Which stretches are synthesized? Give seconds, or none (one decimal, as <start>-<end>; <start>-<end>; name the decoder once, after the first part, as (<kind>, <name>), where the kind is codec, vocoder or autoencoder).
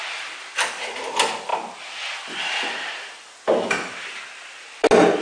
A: none